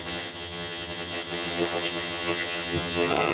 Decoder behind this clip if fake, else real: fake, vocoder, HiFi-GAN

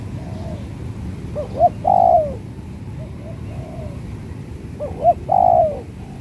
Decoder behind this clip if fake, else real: real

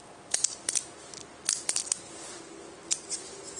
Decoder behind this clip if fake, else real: real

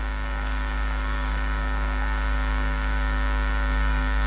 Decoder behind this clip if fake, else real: fake, codec, DAC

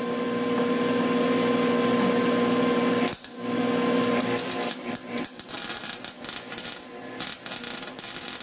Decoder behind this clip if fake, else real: real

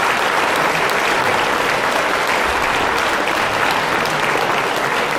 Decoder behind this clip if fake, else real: real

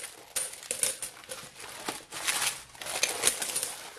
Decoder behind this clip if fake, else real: real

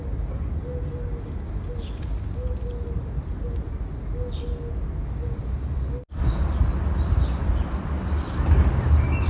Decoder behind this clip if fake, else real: real